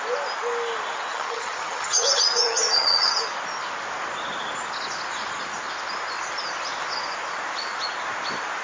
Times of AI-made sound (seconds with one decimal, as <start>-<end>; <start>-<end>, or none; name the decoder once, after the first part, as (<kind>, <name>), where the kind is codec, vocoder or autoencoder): 1.1-3.2 (vocoder, HiFi-GAN)